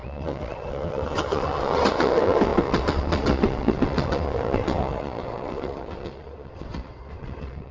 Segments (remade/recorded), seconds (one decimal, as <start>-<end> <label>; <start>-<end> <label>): 0.0-7.7 remade

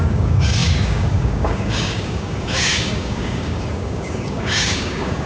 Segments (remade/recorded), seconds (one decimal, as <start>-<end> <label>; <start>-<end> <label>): 0.0-5.3 remade

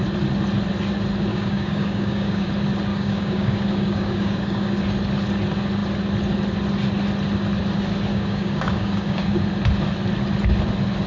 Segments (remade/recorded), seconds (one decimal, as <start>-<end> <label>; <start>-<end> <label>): 0.0-1.3 recorded; 1.3-2.5 remade; 2.5-2.9 recorded; 2.9-4.8 remade; 4.8-8.1 recorded; 8.1-9.4 remade; 9.4-11.1 recorded

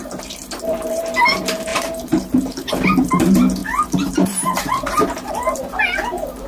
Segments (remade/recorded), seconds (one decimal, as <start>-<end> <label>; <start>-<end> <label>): 0.0-6.5 remade

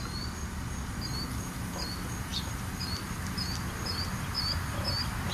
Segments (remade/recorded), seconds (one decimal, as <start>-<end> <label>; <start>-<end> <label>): 0.0-2.3 recorded; 2.3-5.3 remade

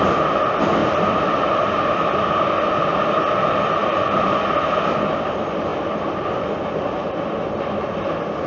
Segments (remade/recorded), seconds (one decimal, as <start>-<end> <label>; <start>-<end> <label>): 0.0-0.8 recorded; 0.8-1.6 remade; 1.6-3.8 recorded; 3.8-4.5 remade; 4.5-8.5 recorded